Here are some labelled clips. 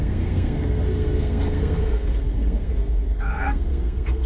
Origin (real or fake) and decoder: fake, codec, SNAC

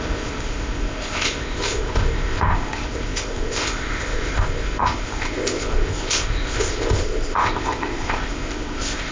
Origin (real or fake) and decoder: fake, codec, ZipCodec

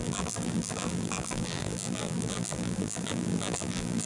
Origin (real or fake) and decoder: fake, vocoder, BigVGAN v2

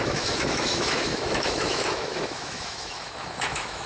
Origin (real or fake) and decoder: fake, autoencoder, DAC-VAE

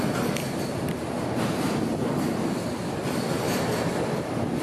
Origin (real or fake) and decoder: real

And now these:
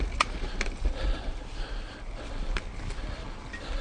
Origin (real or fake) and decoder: real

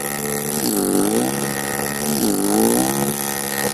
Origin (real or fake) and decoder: real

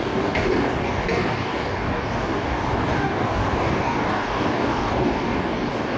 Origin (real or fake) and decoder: fake, codec, DAC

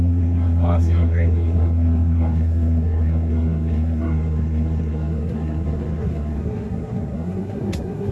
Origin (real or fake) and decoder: fake, codec, SNAC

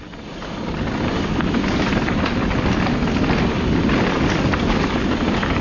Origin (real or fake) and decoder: real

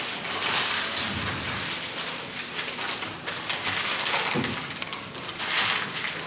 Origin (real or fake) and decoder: real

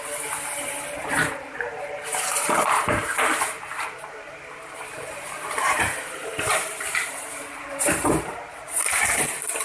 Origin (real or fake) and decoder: fake, vocoder, BigVGAN v2